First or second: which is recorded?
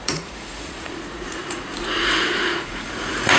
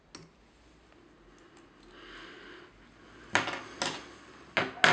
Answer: second